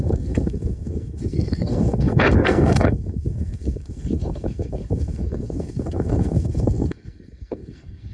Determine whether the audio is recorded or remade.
remade